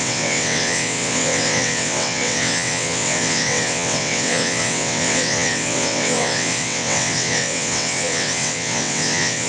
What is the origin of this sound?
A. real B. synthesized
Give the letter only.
B